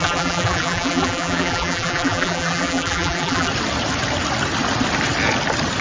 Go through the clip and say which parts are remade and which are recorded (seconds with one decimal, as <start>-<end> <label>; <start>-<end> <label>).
0.0-3.5 remade; 3.5-5.8 recorded